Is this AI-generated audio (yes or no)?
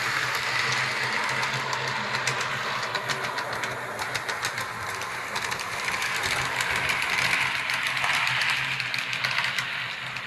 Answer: no